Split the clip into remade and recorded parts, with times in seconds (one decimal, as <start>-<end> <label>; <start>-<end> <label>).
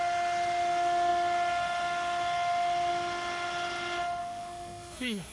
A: 0.0-4.2 recorded; 4.2-5.3 remade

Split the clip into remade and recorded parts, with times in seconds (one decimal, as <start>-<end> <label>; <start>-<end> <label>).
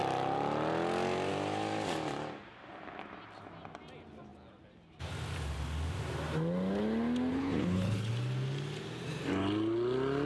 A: 0.0-7.3 recorded; 7.3-8.1 remade; 8.1-10.3 recorded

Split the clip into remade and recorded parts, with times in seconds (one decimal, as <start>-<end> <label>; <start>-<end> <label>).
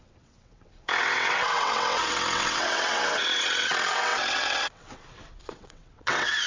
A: 0.0-6.5 remade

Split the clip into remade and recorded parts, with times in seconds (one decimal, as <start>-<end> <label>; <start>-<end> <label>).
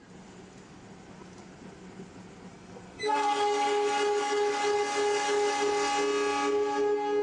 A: 0.0-2.5 recorded; 2.5-5.7 remade; 5.7-7.2 recorded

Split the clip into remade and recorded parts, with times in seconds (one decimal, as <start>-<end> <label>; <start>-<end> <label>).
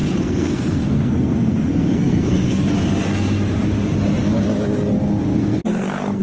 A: 0.0-2.7 remade; 2.7-5.3 recorded; 5.3-6.2 remade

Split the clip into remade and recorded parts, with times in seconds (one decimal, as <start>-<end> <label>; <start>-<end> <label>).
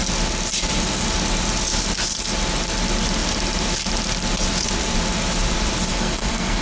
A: 0.0-5.9 recorded; 5.9-6.6 remade